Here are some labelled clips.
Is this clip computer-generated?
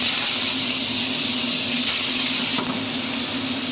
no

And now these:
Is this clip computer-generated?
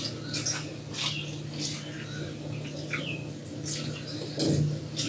no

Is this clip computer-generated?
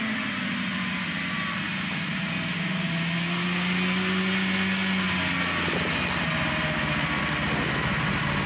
no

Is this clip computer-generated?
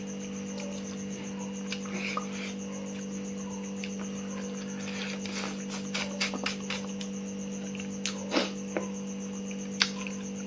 no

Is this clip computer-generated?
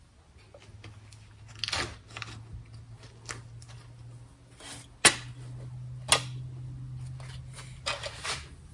no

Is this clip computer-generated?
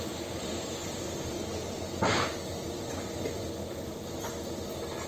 no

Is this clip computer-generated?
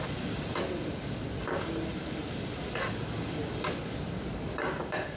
no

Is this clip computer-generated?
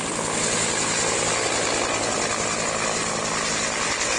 no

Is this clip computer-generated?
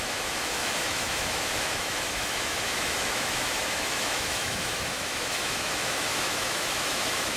yes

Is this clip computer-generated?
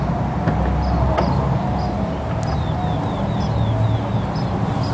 no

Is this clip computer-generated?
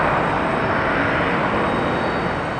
no